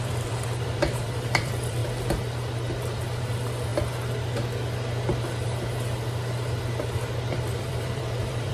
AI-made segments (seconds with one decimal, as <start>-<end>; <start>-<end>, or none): 0.0-1.8; 3.2-3.7; 7.6-8.5